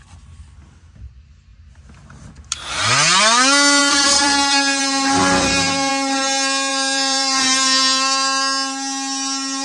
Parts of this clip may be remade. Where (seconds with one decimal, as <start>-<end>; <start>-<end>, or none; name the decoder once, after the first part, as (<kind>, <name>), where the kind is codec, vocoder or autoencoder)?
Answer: 3.8-4.8 (vocoder, BigVGAN v2); 5.2-5.9; 6.7-7.4